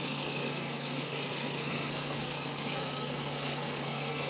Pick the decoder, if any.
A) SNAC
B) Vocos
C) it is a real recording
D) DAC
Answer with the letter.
A